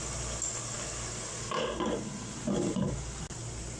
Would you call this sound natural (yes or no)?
yes